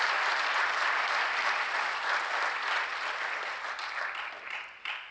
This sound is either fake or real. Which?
fake